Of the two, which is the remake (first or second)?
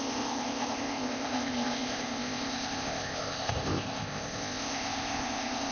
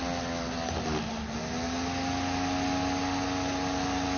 first